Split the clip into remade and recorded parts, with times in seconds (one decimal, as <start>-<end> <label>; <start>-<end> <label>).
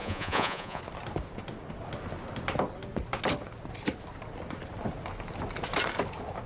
0.0-0.8 remade; 0.8-6.5 recorded